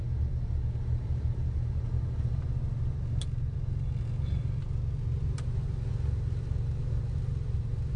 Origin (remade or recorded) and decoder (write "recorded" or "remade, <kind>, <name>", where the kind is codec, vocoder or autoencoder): recorded